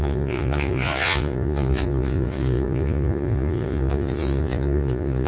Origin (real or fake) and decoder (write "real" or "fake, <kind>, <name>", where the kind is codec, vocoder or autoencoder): fake, vocoder, Vocos